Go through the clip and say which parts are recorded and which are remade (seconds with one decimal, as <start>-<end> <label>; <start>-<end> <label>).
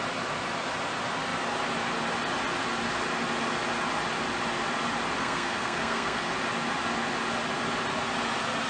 0.0-5.2 recorded; 5.2-6.3 remade; 6.3-8.7 recorded